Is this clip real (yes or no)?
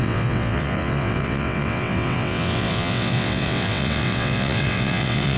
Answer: no